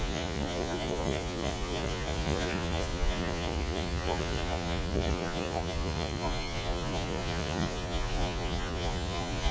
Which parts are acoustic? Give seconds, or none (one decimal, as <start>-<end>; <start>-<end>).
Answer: none